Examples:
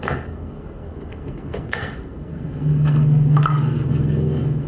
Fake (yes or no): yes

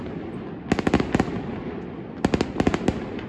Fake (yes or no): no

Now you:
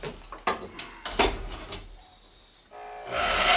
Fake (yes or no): no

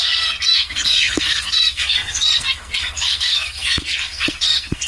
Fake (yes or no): yes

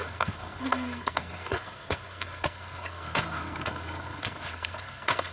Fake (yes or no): yes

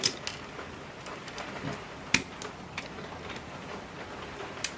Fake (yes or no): no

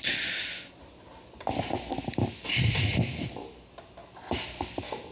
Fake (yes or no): no